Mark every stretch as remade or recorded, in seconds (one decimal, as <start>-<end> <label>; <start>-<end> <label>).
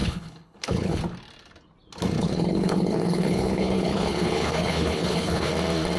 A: 0.0-1.0 remade; 1.0-2.2 recorded; 2.2-5.5 remade; 5.5-6.0 recorded